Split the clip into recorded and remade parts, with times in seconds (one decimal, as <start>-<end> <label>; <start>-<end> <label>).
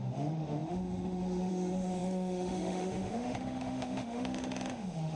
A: 0.0-5.2 remade